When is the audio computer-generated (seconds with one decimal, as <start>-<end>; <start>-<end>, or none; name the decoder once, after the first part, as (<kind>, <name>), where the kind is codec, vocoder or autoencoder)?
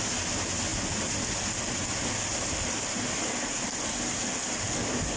none